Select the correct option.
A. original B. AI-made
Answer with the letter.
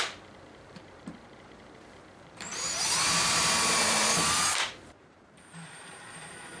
B